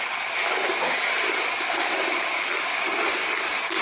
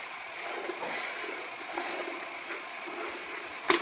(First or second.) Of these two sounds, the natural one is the first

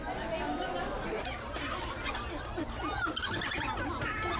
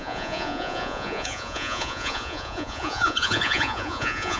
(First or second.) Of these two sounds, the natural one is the first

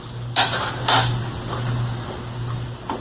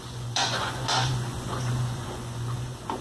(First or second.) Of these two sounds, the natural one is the first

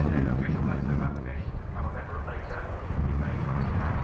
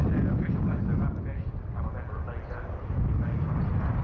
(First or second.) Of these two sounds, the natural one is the second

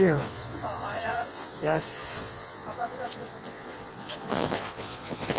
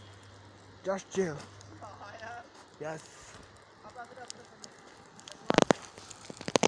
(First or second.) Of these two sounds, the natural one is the second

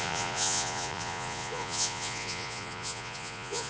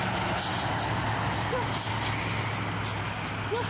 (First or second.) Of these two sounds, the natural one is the second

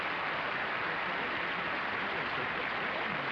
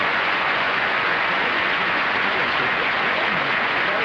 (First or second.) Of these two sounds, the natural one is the first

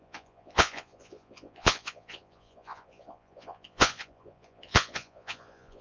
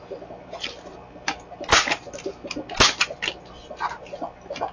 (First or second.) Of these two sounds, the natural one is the second